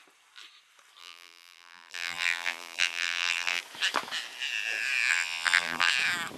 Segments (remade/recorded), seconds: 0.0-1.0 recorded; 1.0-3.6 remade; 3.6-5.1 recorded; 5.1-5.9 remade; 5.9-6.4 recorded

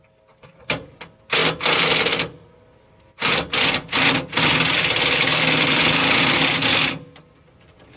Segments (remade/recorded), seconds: 0.0-8.0 recorded

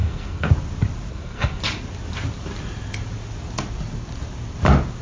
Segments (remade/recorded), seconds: 0.0-0.5 remade; 0.5-1.1 recorded; 1.1-1.6 remade; 1.6-5.0 recorded

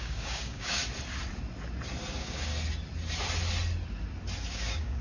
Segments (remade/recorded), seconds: 0.0-0.8 remade; 0.8-2.1 recorded; 2.1-2.5 remade; 2.5-4.5 recorded; 4.5-5.0 remade

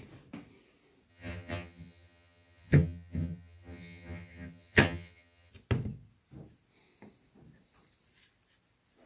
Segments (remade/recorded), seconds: 0.0-1.1 recorded; 1.1-5.5 remade; 5.5-9.1 recorded

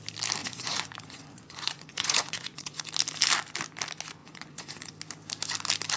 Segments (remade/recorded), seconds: 0.0-0.4 recorded; 0.4-2.8 remade; 2.8-4.2 recorded; 4.2-4.9 remade; 4.9-6.0 recorded